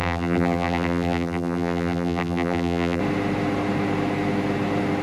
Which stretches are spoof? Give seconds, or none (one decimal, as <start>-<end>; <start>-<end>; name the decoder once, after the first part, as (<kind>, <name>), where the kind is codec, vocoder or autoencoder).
0.0-3.0 (vocoder, BigVGAN v2)